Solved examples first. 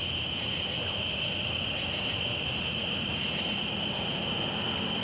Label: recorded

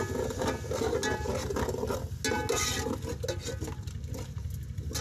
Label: recorded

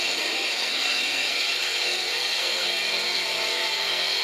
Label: remade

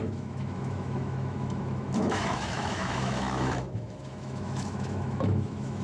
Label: remade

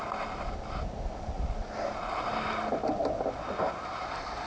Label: recorded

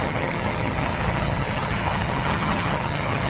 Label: remade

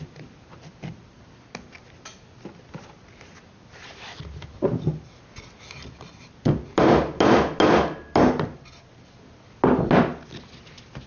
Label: recorded